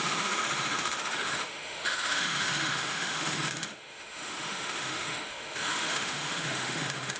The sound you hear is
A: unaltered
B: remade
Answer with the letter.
B